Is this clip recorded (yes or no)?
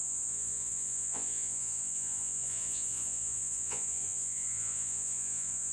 no